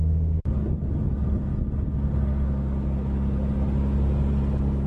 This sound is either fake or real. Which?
real